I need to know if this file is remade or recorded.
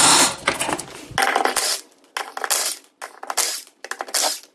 recorded